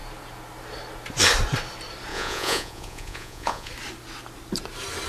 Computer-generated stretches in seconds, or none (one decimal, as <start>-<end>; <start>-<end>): 2.1-3.7